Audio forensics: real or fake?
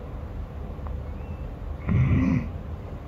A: real